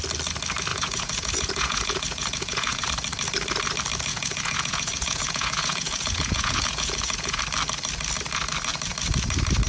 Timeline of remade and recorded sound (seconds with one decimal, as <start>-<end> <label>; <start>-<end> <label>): 0.0-0.7 recorded; 0.7-2.9 remade; 2.9-4.1 recorded; 4.1-7.4 remade; 7.4-9.7 recorded